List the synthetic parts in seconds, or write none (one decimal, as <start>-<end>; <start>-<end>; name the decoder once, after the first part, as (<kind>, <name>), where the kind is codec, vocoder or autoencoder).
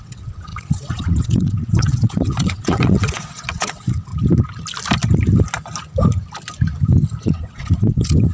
0.0-4.1 (vocoder, WaveNeXt); 7.2-8.3